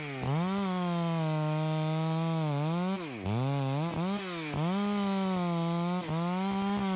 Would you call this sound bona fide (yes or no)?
yes